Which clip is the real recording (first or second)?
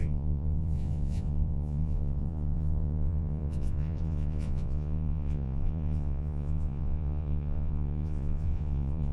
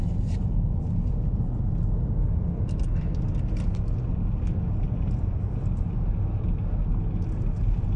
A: second